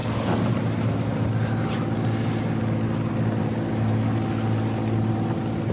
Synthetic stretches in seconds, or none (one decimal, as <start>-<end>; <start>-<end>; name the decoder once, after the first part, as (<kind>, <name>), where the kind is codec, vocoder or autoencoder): none